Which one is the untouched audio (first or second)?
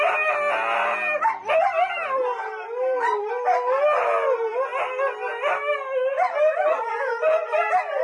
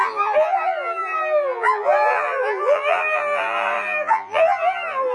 first